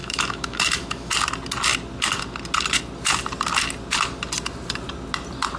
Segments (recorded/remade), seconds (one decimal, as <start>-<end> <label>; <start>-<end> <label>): 0.0-1.1 remade; 1.1-5.6 recorded